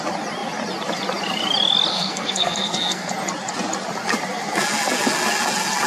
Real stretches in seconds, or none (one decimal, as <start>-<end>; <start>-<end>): 0.0-1.9; 3.1-5.9